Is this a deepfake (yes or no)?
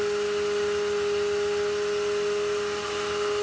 no